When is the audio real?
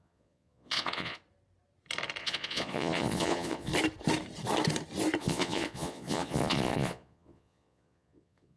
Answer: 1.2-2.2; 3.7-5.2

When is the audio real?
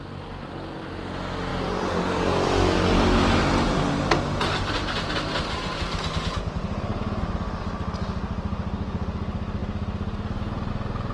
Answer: 0.0-11.1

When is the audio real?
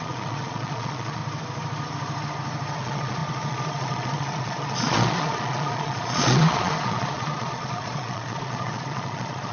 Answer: 1.2-2.8